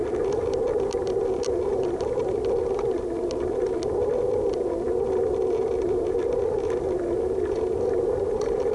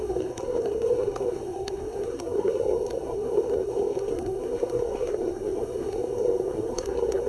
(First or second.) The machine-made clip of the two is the second